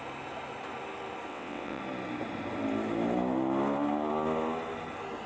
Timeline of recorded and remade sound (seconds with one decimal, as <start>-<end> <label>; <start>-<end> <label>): 0.0-1.3 recorded; 1.3-1.8 remade; 1.8-5.3 recorded